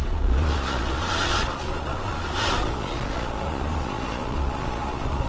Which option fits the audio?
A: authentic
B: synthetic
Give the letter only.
B